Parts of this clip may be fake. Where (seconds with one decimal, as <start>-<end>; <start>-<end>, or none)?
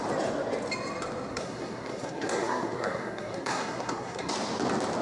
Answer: 1.3-4.3